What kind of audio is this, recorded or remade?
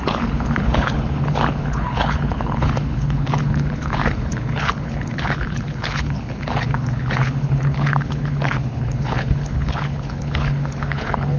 remade